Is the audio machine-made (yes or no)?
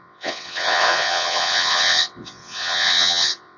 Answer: yes